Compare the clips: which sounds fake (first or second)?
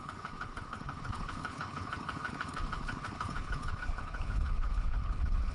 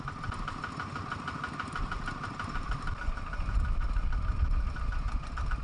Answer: first